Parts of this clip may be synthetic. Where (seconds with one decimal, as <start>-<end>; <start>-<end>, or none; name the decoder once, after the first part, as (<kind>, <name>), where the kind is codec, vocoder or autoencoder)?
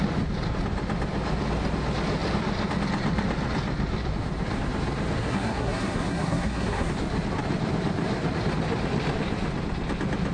5.2-6.9 (codec, SNAC)